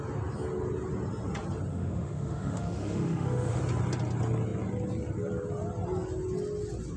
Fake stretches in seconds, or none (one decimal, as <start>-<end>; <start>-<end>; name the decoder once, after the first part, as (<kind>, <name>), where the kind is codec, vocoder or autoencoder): 1.7-3.6 (autoencoder, DAC-VAE)